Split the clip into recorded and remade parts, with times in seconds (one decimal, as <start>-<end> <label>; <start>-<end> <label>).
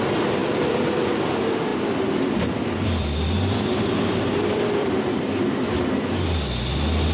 0.0-0.4 recorded; 0.4-1.1 remade; 1.1-1.7 recorded; 1.7-6.0 remade; 6.0-7.1 recorded